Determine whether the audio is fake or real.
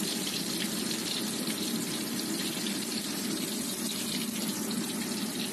fake